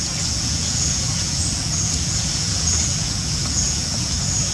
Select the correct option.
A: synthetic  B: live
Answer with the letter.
A